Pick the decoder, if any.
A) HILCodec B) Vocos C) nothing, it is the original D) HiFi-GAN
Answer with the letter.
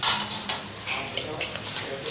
C